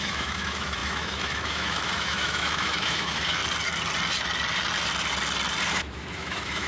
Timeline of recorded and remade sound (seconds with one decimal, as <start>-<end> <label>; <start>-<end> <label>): 0.0-3.4 remade; 3.4-5.7 recorded; 5.7-6.7 remade